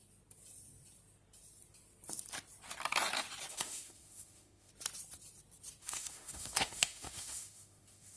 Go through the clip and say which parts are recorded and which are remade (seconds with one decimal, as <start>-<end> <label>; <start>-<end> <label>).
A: 0.0-3.5 recorded; 3.5-4.7 remade; 4.7-5.8 recorded; 5.8-8.2 remade